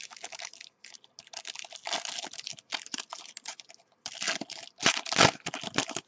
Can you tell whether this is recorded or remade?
recorded